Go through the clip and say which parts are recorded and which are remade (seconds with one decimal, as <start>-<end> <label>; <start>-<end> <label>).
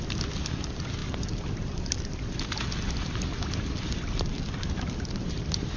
0.0-5.8 recorded